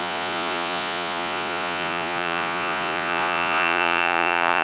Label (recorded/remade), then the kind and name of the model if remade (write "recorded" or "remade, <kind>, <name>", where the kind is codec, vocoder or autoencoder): remade, vocoder, Vocos